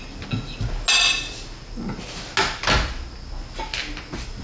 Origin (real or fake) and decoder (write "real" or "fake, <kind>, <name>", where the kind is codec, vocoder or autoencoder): real